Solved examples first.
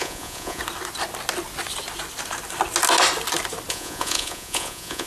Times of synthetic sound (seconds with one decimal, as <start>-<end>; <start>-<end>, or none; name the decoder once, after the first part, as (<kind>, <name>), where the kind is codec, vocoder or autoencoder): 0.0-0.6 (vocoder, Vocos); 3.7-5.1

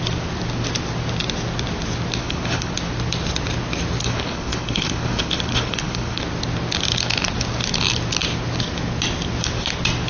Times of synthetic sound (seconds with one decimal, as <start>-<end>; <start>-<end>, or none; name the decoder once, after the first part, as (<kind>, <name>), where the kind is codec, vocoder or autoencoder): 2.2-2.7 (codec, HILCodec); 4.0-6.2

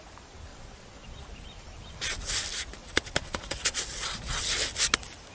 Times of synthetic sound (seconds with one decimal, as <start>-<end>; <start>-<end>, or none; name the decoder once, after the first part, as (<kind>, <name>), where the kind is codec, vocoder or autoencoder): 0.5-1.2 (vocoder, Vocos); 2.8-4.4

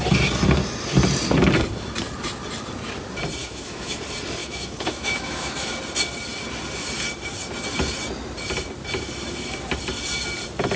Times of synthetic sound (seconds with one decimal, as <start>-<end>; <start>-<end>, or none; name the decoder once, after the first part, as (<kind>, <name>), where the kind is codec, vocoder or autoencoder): 3.4-4.0 (autoencoder, DAC-VAE); 4.4-5.8

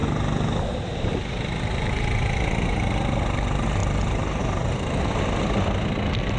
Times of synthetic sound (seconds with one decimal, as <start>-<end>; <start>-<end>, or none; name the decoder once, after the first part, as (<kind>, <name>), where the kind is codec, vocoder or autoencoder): none

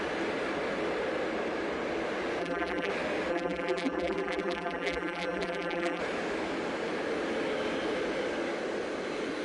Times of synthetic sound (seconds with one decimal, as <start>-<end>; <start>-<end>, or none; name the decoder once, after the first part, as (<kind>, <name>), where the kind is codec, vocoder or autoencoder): 2.4-2.9 (vocoder, BigVGAN v2); 3.3-6.0

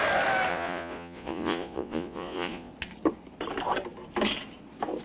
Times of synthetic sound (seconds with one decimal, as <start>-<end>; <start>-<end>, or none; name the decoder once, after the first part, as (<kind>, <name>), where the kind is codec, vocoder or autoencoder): 0.5-2.7 (vocoder, Vocos)

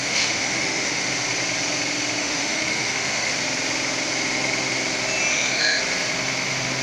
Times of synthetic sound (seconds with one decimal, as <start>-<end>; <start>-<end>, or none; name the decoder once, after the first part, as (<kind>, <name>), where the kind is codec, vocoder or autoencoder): 0.0-1.1 (autoencoder, DAC-VAE); 2.2-3.3; 5.3-5.8